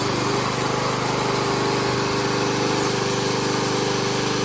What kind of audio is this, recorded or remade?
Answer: recorded